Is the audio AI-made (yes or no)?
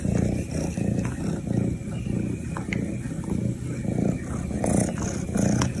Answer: no